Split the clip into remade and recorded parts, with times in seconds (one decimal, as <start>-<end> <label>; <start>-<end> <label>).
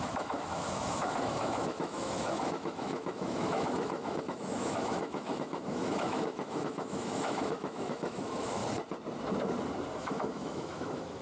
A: 0.0-8.6 remade; 8.6-10.0 recorded; 10.0-11.2 remade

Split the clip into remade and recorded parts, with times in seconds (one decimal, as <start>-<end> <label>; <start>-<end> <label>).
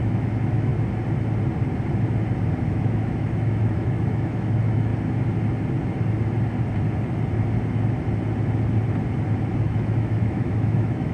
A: 0.0-0.7 remade; 0.7-2.7 recorded; 2.7-4.9 remade; 4.9-9.6 recorded; 9.6-11.1 remade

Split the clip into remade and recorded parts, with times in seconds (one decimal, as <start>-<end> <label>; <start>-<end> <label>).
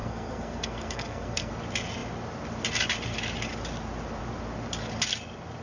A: 0.0-1.5 remade; 1.5-5.6 recorded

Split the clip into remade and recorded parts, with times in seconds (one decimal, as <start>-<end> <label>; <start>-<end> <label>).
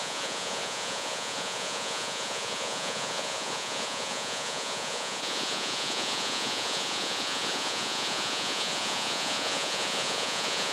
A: 0.0-10.7 remade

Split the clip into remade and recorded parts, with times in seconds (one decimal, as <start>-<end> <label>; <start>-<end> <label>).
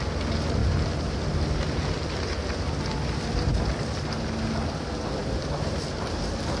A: 0.0-0.6 recorded; 0.6-2.9 remade; 2.9-5.2 recorded; 5.2-5.8 remade; 5.8-6.6 recorded